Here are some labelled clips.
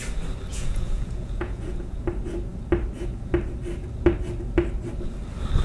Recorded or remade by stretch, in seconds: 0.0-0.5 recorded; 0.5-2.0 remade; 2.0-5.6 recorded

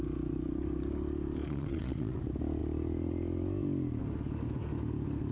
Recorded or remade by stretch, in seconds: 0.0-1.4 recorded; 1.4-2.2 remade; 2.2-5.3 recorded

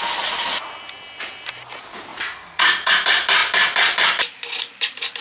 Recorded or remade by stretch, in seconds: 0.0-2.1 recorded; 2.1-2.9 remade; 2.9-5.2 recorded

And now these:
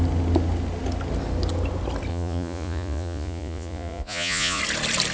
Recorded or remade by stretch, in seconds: 0.0-2.1 recorded; 2.1-4.6 remade; 4.6-5.1 recorded

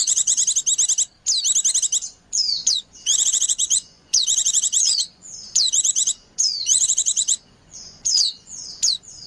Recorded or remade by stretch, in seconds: 0.0-0.4 remade; 0.4-2.1 recorded; 2.1-9.3 remade

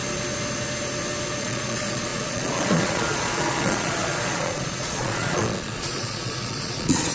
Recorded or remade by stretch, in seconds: 0.0-1.4 recorded; 1.4-7.1 remade